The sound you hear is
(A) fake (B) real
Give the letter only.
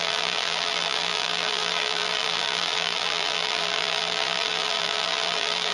A